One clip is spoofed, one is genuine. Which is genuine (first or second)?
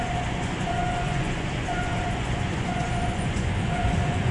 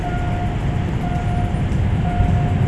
second